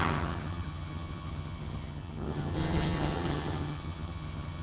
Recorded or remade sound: remade